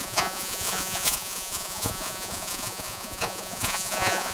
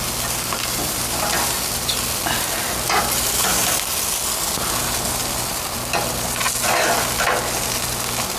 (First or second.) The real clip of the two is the second